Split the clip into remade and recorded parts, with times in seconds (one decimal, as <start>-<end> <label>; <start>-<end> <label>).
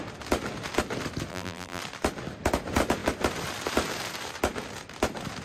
0.0-1.3 recorded; 1.3-1.8 remade; 1.8-5.4 recorded